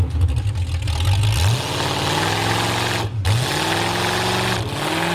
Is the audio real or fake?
real